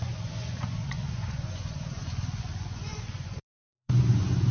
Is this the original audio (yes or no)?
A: no